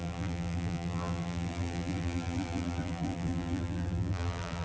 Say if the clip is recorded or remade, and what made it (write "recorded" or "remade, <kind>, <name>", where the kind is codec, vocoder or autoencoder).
remade, vocoder, BigVGAN v2